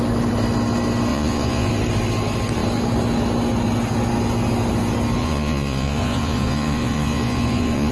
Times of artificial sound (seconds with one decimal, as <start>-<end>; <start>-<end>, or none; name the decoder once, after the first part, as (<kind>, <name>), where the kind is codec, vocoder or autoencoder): 1.1-1.7 (vocoder, Vocos); 5.2-7.9